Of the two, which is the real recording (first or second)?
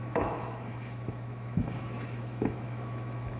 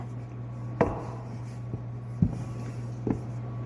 second